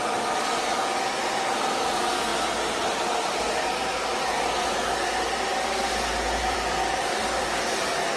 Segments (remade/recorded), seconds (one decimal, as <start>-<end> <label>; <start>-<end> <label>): 0.0-6.4 recorded; 6.4-7.4 remade; 7.4-8.2 recorded